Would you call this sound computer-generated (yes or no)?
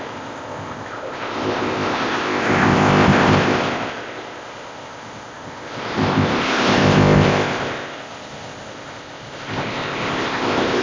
yes